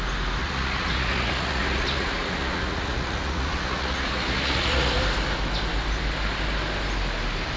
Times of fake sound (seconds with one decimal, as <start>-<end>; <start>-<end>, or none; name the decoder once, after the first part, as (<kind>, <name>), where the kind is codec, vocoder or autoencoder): 0.4-5.0 (vocoder, Vocos)